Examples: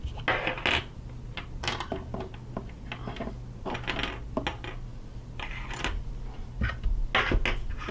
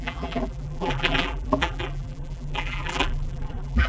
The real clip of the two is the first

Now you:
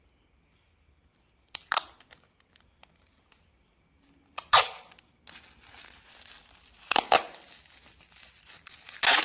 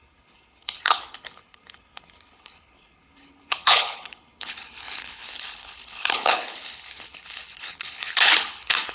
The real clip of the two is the first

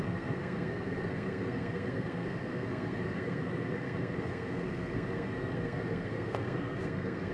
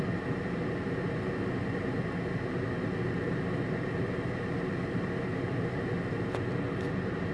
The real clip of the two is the second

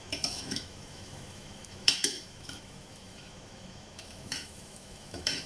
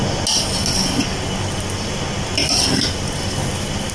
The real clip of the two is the second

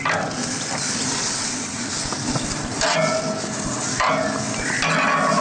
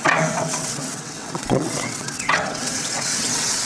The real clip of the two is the first